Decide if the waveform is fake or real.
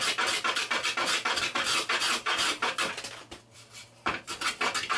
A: real